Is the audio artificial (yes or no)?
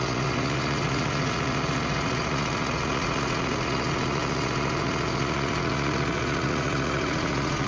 yes